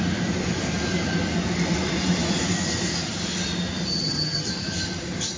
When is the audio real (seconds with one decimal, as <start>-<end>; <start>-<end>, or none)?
0.0-3.9; 4.5-5.4